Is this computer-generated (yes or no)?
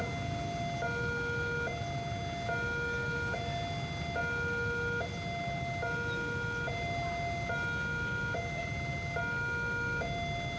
no